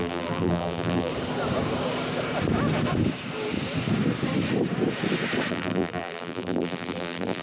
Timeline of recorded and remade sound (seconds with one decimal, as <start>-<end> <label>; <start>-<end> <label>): 0.0-1.1 remade; 1.1-5.5 recorded; 5.5-7.4 remade